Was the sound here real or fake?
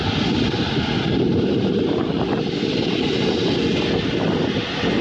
real